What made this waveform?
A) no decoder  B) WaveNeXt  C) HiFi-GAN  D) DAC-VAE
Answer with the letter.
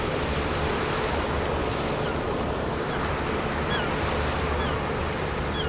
A